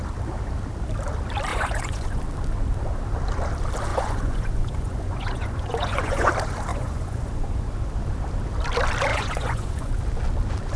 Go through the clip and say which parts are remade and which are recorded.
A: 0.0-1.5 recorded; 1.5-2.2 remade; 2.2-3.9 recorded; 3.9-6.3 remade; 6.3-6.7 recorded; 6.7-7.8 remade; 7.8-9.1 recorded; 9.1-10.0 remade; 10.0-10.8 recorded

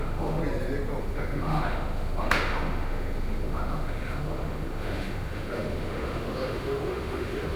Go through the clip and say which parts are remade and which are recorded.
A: 0.0-0.4 remade; 0.4-1.0 recorded; 1.0-7.6 remade

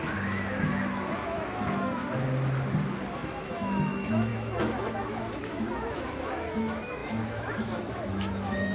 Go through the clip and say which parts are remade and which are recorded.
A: 0.0-2.0 remade; 2.0-3.2 recorded; 3.2-8.7 remade

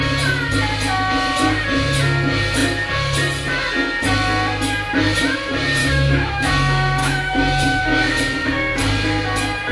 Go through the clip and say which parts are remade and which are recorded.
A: 0.0-5.8 recorded; 5.8-6.5 remade; 6.5-7.0 recorded; 7.0-7.8 remade; 7.8-9.7 recorded